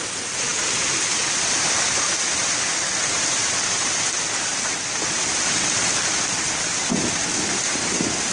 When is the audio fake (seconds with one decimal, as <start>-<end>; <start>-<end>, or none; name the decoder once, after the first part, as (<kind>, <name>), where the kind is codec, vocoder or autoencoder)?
none